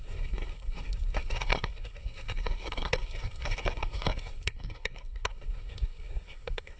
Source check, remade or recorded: remade